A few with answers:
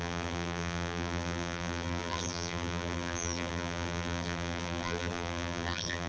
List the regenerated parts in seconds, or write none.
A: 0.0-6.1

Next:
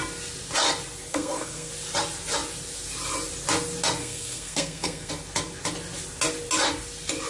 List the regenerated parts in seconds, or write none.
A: 1.1-1.7; 4.0-5.1